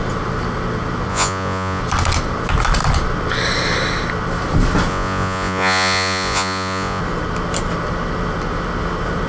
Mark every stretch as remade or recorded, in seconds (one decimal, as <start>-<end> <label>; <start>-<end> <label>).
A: 0.0-1.1 recorded; 1.1-1.8 remade; 1.8-4.9 recorded; 4.9-7.0 remade; 7.0-9.3 recorded

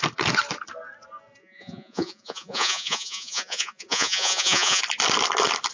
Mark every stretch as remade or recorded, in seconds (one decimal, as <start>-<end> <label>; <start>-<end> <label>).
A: 0.0-1.4 recorded; 1.4-4.8 remade; 4.8-5.7 recorded